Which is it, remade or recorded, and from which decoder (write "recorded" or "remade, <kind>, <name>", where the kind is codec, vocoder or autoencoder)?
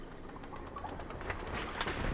recorded